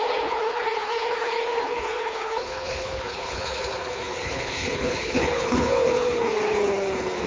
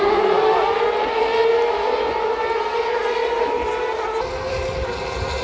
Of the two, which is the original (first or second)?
second